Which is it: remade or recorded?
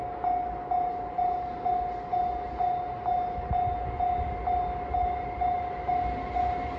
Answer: recorded